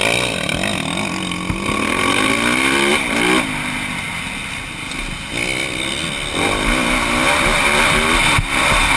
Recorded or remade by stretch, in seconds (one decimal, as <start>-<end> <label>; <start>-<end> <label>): 0.0-9.0 recorded